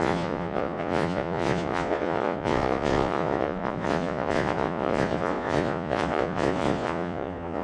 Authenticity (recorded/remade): remade